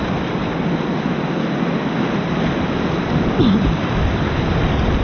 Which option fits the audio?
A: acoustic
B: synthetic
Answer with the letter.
A